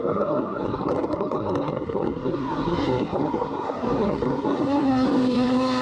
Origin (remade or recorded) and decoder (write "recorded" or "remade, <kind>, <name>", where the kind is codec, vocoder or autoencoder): remade, codec, SNAC